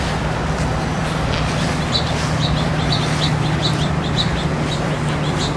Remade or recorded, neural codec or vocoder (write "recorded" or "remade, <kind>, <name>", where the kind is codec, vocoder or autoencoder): recorded